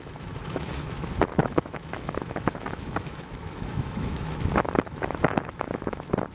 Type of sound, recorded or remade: remade